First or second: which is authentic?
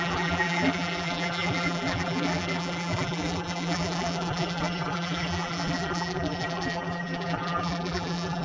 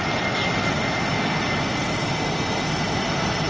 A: second